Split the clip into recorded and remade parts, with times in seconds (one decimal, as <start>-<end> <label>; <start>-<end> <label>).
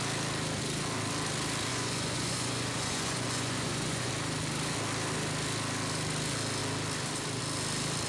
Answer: 0.0-1.7 recorded; 1.7-4.1 remade; 4.1-8.1 recorded